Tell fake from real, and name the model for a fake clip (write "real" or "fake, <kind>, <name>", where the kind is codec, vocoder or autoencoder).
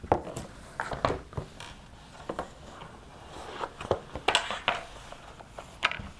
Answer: real